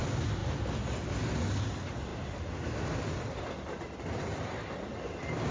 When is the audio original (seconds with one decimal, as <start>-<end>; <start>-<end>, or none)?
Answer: 0.0-5.5